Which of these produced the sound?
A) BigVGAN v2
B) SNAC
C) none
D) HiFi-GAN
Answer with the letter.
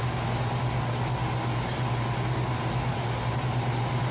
C